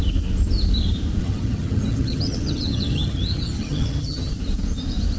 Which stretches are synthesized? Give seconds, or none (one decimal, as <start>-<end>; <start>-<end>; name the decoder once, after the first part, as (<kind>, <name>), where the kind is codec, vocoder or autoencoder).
1.2-4.3 (vocoder, HiFi-GAN)